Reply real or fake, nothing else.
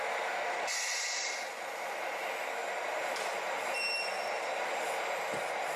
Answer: real